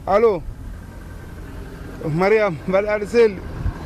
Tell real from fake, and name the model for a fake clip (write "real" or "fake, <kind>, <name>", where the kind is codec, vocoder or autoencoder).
real